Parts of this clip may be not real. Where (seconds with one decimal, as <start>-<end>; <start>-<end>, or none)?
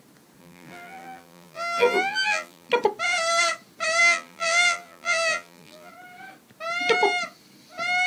0.4-2.7; 4.0-5.9